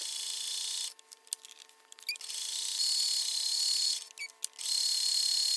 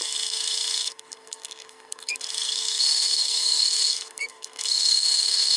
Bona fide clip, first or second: first